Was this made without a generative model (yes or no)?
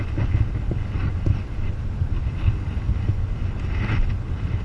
yes